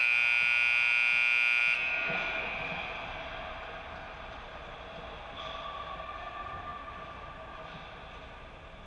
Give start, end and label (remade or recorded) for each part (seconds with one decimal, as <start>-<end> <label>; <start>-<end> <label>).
0.0-8.9 recorded